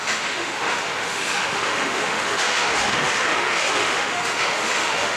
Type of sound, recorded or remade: remade